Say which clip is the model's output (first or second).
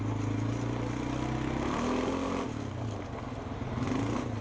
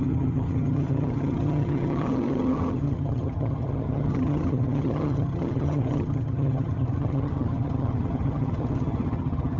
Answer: second